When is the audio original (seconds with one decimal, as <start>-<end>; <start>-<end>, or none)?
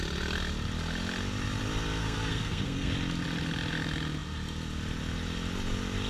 0.0-2.0; 2.9-6.1